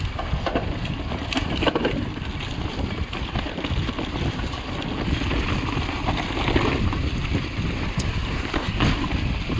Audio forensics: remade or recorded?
recorded